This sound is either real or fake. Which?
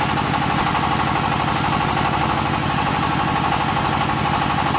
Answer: real